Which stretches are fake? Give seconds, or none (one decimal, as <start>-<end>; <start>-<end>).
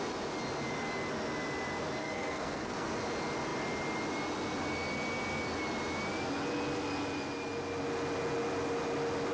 2.0-2.9